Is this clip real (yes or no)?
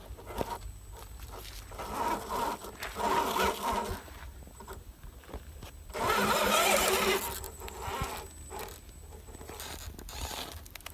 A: yes